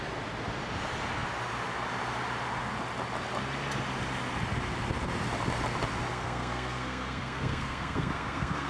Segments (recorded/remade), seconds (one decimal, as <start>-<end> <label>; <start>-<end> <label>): 0.0-6.1 recorded; 6.1-8.7 remade